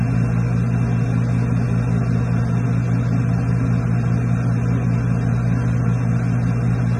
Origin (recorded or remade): recorded